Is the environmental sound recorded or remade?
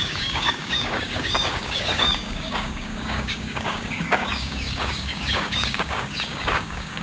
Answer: remade